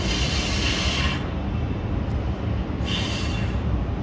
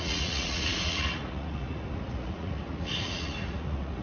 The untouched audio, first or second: first